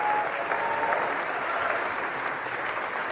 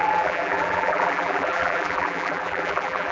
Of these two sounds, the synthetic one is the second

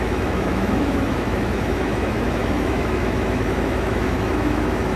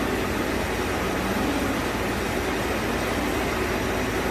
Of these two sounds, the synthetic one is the first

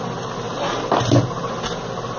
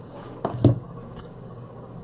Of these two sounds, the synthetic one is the second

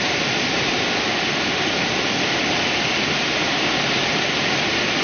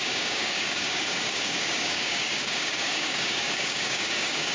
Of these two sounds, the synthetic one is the second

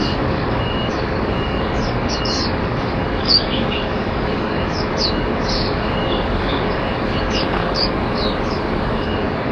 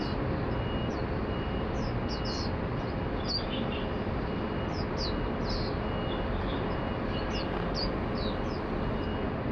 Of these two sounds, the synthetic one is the first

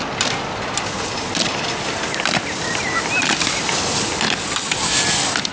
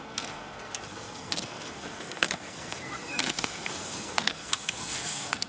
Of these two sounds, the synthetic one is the second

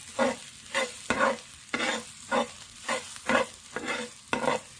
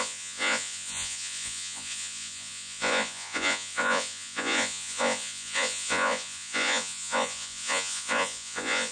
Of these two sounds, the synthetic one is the second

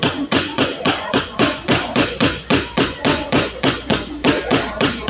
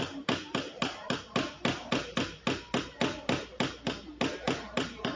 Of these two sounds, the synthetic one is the first